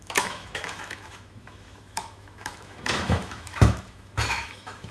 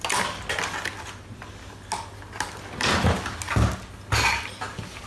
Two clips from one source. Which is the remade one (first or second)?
first